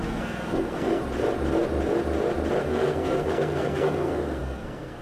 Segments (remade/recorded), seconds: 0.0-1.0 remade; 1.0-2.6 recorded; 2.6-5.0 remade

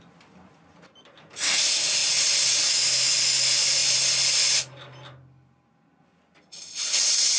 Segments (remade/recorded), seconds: 0.0-7.4 recorded

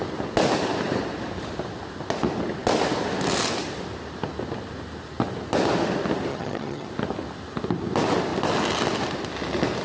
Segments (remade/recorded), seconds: 0.0-6.3 recorded; 6.3-6.9 remade; 6.9-9.8 recorded

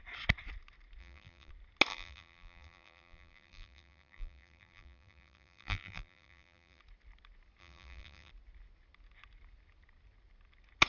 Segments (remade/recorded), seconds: 0.0-1.0 recorded; 1.0-1.5 remade; 1.5-1.9 recorded; 1.9-6.8 remade; 6.8-7.6 recorded; 7.6-8.3 remade; 8.3-10.9 recorded

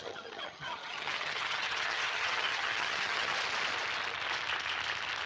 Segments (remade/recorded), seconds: 0.0-3.3 remade; 3.3-5.3 recorded

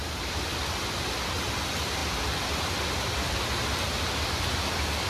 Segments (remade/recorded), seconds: 0.0-5.1 recorded

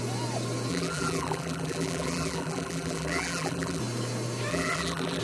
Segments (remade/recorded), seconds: 0.0-0.7 recorded; 0.7-3.8 remade; 3.8-4.5 recorded; 4.5-5.2 remade